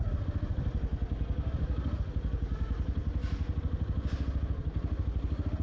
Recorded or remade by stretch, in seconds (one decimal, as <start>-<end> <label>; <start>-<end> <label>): 0.0-5.6 recorded